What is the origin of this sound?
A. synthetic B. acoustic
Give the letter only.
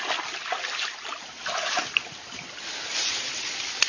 B